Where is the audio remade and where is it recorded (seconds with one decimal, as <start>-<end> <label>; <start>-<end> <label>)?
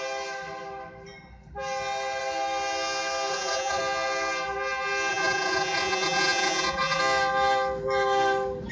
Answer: 0.0-3.3 recorded; 3.3-3.8 remade; 3.8-5.1 recorded; 5.1-7.0 remade; 7.0-8.7 recorded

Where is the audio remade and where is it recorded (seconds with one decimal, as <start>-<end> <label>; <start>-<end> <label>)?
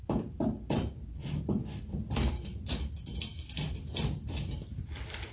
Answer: 0.0-5.3 recorded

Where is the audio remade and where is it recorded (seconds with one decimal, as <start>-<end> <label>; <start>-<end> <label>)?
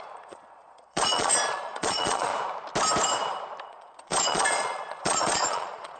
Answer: 0.0-2.3 remade; 2.3-3.6 recorded; 3.6-6.0 remade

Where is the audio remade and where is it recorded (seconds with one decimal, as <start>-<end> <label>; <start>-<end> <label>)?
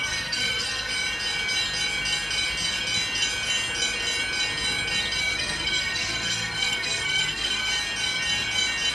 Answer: 0.0-0.9 remade; 0.9-5.2 recorded; 5.2-7.7 remade; 7.7-8.9 recorded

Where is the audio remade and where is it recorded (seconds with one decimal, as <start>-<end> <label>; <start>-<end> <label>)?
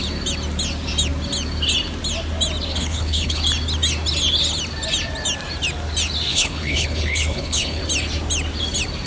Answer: 0.0-2.7 recorded; 2.7-3.4 remade; 3.4-6.3 recorded; 6.3-7.8 remade; 7.8-9.1 recorded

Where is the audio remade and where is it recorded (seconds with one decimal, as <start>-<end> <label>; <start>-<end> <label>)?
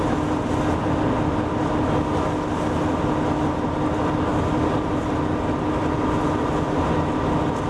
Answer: 0.0-7.7 recorded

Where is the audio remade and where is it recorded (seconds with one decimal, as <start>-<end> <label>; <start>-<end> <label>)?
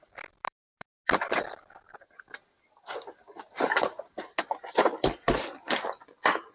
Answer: 0.0-6.5 recorded